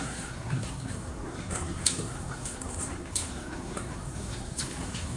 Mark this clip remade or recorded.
remade